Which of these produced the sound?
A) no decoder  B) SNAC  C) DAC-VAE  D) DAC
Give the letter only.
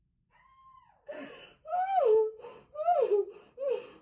A